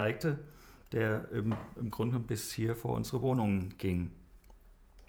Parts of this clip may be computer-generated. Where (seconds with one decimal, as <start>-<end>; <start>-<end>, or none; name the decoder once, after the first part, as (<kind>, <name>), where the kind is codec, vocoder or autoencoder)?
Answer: 0.0-0.9 (vocoder, Vocos); 1.6-5.1